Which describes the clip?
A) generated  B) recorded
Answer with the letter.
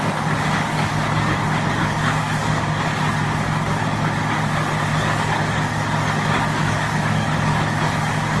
A